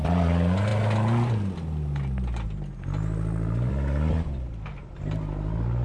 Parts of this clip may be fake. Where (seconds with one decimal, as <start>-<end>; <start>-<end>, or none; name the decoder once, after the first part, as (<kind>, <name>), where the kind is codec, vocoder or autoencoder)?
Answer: none